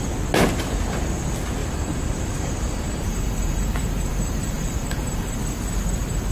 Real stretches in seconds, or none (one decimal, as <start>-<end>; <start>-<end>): 0.0-1.6; 5.4-6.3